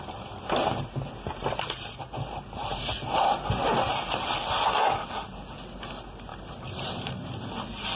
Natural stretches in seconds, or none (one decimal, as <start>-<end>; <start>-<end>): 0.0-6.3; 7.4-7.9